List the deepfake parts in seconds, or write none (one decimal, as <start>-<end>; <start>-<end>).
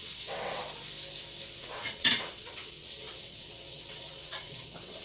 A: 0.0-0.6; 1.6-5.0